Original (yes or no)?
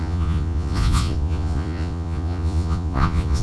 no